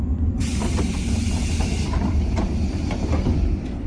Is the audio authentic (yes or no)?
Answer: yes